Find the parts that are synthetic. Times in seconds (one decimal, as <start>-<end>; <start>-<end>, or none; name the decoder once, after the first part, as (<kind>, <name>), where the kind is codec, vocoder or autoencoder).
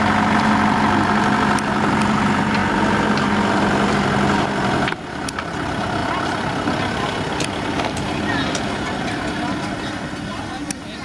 none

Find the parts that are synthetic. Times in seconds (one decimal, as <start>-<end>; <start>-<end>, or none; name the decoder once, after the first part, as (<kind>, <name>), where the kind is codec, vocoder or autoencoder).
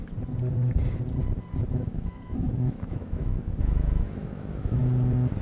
1.7-4.8 (autoencoder, DAC-VAE)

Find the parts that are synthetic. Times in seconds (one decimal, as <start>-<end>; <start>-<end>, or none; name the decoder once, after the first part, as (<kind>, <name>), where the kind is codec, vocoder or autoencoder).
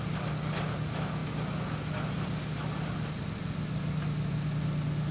none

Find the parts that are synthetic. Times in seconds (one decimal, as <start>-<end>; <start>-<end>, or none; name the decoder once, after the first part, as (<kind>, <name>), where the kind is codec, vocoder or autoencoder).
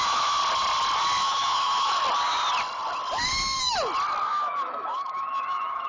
0.0-0.4 (autoencoder, DAC-VAE); 1.2-2.0; 4.3-5.9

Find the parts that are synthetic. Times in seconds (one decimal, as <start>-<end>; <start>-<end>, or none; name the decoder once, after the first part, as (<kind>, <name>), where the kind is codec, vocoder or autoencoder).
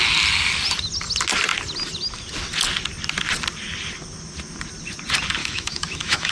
5.4-6.3 (autoencoder, DAC-VAE)